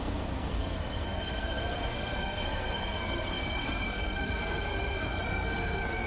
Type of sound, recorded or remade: remade